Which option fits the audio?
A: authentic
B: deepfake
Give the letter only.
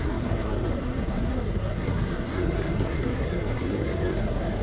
B